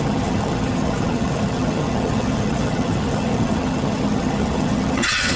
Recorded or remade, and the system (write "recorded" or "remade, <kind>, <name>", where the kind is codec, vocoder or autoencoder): remade, vocoder, HiFi-GAN